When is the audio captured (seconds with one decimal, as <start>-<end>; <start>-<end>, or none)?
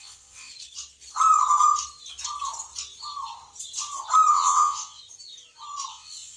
0.5-4.3; 5.0-5.9